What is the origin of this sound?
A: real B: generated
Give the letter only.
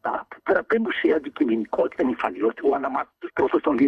B